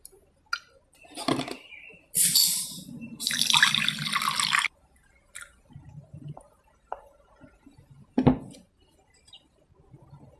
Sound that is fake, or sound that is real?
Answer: real